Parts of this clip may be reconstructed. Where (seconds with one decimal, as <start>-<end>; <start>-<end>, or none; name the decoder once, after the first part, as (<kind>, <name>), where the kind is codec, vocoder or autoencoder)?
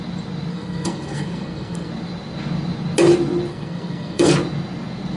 0.5-1.9 (codec, SNAC); 3.5-4.3